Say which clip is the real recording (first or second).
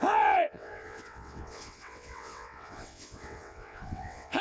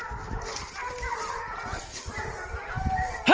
second